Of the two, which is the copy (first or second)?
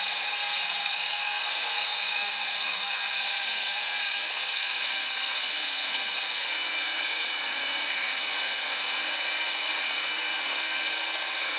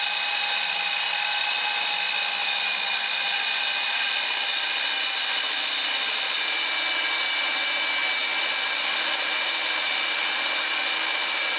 first